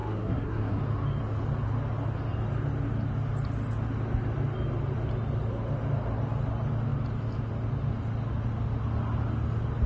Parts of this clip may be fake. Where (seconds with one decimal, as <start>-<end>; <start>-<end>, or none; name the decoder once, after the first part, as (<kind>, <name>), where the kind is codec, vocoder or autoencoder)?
0.0-0.8 (codec, SNAC)